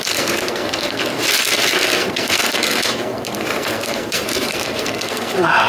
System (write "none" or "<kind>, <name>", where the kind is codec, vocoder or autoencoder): codec, SNAC